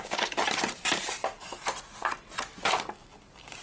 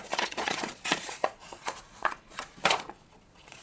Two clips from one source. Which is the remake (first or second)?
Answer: second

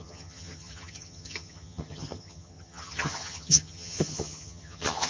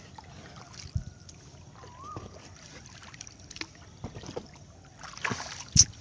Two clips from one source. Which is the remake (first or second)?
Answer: first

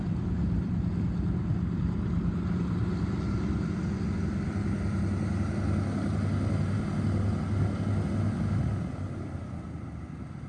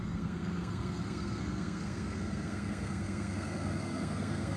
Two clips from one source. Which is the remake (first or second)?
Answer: second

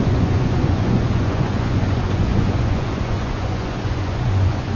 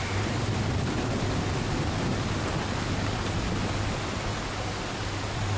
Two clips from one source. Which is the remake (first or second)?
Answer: first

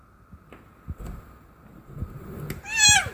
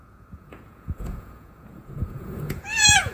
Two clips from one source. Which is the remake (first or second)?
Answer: second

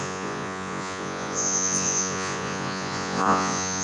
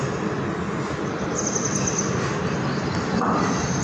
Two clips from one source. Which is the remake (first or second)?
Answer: first